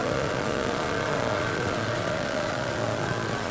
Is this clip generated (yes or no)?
yes